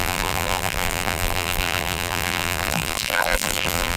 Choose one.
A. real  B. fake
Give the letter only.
B